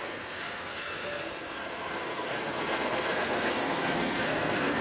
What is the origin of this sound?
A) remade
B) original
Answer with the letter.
A